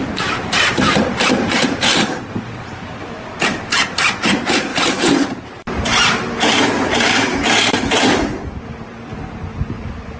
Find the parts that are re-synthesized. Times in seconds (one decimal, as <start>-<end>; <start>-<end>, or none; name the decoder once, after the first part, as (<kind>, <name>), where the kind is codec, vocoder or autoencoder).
0.0-1.9 (vocoder, BigVGAN v2); 3.4-10.2